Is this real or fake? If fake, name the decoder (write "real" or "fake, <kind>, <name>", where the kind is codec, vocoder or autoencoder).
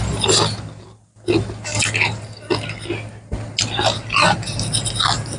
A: real